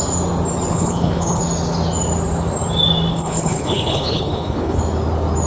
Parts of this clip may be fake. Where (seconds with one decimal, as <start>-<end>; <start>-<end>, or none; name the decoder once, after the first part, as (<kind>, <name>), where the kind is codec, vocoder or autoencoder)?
0.7-1.4 (codec, HILCodec); 3.1-4.8